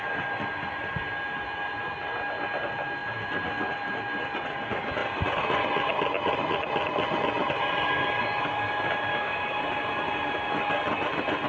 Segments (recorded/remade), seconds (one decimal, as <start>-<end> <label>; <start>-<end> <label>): 0.0-9.1 recorded; 9.1-9.6 remade; 9.6-11.5 recorded